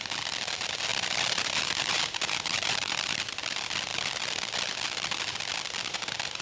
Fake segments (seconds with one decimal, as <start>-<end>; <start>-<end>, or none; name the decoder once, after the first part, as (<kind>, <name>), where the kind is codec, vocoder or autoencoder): 0.9-3.2 (vocoder, BigVGAN v2)